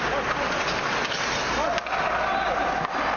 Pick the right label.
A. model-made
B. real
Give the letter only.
B